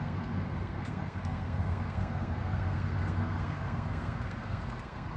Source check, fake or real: fake